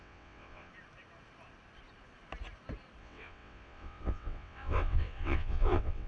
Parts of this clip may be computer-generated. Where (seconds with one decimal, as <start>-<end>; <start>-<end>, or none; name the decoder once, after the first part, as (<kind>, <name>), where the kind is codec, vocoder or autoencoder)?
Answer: 0.0-0.7 (vocoder, WaveNeXt); 3.0-6.1